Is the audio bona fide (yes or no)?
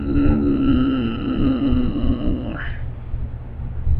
yes